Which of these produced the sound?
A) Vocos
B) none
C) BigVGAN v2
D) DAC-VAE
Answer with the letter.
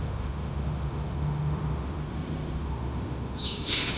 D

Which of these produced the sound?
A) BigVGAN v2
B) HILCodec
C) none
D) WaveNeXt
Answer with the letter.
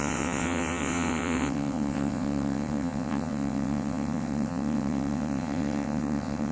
D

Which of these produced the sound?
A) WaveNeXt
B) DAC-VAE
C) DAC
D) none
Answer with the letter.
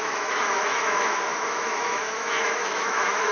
B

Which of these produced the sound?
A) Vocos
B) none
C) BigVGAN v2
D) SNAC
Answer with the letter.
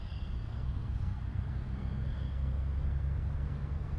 D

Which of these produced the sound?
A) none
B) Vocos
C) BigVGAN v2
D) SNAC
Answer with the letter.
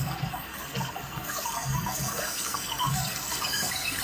D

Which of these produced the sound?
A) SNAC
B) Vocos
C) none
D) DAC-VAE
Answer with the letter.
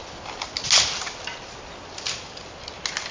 C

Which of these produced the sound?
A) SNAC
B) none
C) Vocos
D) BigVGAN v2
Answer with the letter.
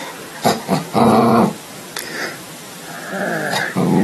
B